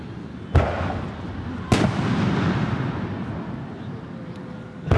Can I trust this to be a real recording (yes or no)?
yes